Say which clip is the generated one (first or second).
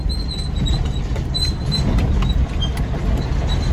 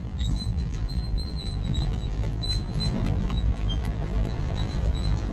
second